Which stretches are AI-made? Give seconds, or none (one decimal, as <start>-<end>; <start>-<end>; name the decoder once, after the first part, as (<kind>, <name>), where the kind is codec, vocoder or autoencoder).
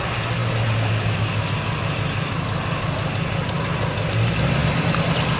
none